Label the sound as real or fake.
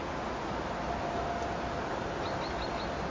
real